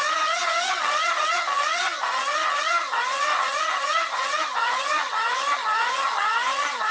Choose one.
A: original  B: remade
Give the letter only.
B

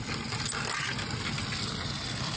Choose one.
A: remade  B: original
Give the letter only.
B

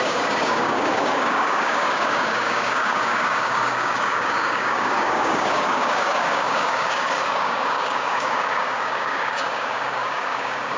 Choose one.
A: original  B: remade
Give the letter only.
B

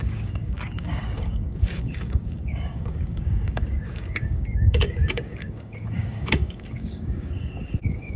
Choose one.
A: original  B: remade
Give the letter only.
B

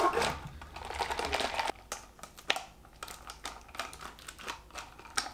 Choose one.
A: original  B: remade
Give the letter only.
A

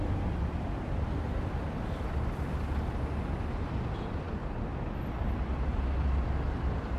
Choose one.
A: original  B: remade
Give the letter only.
A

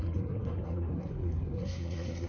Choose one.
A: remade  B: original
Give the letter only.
A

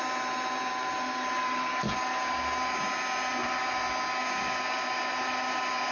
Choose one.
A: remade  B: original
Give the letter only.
B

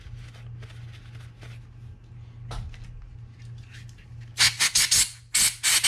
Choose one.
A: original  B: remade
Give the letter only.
A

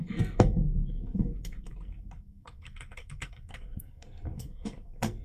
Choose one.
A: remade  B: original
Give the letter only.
A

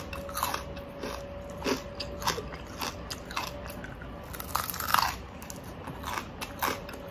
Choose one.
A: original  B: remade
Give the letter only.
A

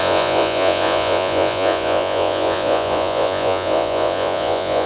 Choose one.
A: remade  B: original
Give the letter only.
A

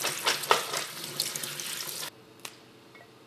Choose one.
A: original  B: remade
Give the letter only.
A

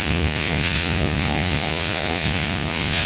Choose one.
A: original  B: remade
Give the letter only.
B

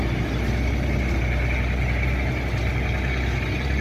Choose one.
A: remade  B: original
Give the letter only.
B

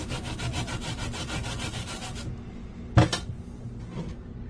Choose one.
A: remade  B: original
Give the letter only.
B